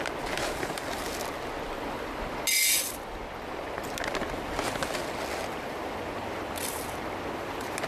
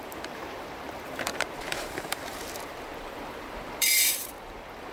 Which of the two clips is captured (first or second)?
first